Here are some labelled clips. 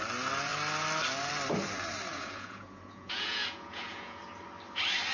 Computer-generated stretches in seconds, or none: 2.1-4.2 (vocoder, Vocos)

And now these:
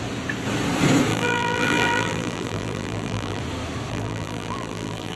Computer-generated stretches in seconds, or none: 1.1-3.4 (vocoder, BigVGAN v2); 3.9-5.2

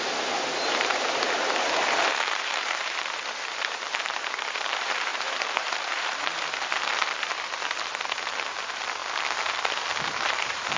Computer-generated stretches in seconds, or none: 0.0-9.0 (vocoder, BigVGAN v2); 10.2-10.8

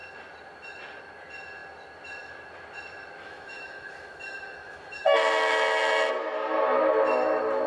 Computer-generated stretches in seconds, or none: 3.2-6.1 (autoencoder, DAC-VAE)